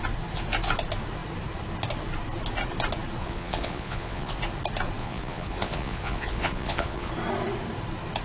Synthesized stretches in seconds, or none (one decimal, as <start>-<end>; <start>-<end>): 3.2-4.3; 5.0-7.1

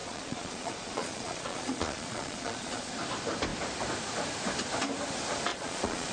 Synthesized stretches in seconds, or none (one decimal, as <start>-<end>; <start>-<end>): 0.0-2.9; 5.5-6.1

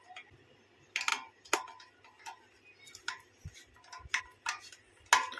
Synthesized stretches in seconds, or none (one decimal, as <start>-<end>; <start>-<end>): none

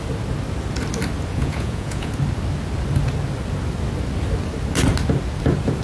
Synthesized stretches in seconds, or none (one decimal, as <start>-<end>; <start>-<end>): 1.3-2.1

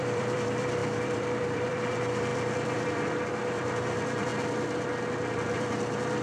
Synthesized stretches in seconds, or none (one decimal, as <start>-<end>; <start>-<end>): 0.0-4.3; 5.3-6.2

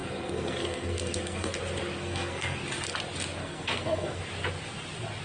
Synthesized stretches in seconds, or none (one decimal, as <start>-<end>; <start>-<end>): 0.0-1.5; 2.0-2.6; 3.4-4.2

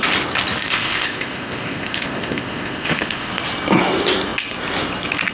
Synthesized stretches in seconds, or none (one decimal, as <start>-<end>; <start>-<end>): 0.6-3.3